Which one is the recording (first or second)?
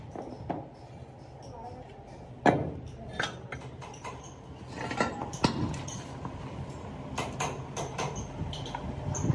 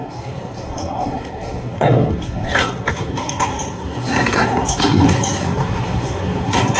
first